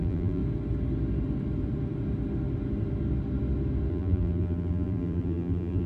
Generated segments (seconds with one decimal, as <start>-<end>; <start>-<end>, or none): 0.0-0.4; 3.9-5.9